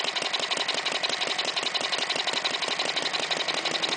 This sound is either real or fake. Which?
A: real